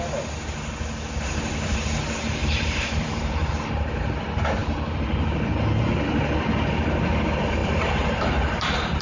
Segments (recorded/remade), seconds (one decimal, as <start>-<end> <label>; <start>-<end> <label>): 0.0-2.4 recorded; 2.4-3.5 remade; 3.5-7.6 recorded; 7.6-9.0 remade